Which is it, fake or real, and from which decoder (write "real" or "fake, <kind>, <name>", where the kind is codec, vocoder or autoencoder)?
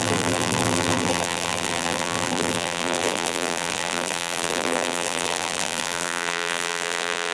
fake, vocoder, BigVGAN v2